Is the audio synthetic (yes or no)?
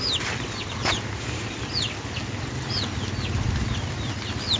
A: no